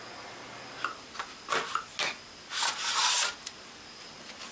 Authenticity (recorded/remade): recorded